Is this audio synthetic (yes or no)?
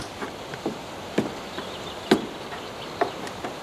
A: yes